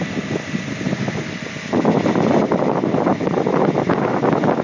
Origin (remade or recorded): recorded